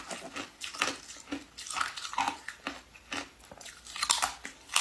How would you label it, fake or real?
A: real